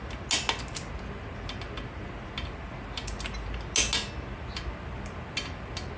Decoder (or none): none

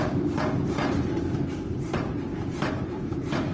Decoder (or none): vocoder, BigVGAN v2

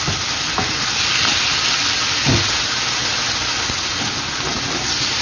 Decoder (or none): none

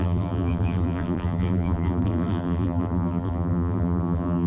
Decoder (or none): vocoder, BigVGAN v2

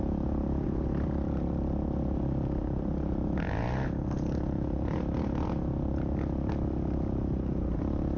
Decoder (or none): none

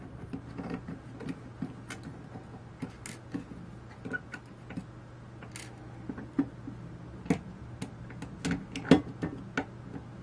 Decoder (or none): none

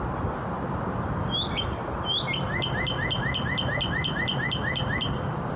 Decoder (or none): none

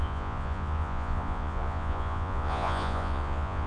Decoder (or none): vocoder, Vocos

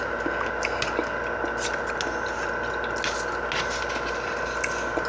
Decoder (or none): none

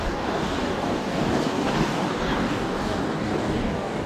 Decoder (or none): codec, DAC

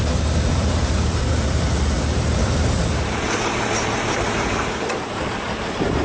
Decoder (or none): vocoder, BigVGAN v2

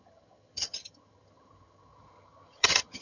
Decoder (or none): vocoder, HiFi-GAN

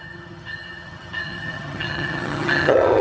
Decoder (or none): vocoder, HiFi-GAN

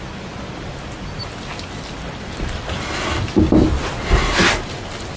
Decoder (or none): none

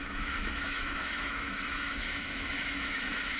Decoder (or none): autoencoder, DAC-VAE